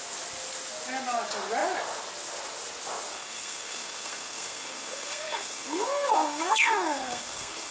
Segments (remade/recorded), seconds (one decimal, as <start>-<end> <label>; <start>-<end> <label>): 0.0-3.1 recorded; 3.1-7.7 remade